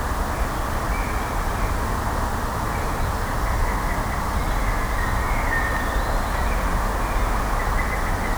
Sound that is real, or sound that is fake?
real